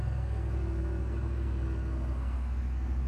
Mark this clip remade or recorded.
remade